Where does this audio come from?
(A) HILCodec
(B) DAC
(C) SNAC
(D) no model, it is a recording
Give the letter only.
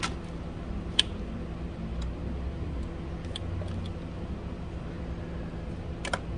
D